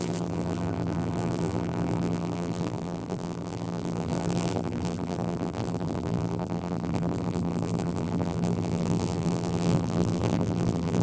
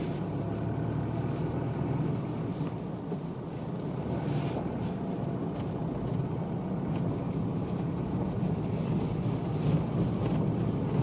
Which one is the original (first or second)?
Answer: second